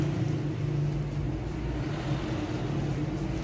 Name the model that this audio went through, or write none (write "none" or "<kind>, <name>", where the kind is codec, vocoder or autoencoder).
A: none